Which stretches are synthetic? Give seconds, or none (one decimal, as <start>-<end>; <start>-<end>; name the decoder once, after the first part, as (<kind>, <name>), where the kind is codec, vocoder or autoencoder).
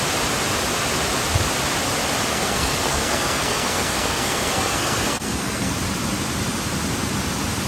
2.3-5.7 (codec, SNAC)